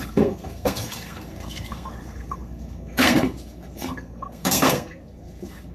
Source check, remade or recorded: remade